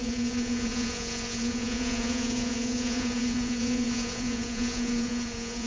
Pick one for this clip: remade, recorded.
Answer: remade